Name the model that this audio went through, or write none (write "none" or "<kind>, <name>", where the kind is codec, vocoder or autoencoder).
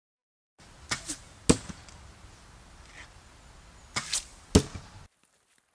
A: none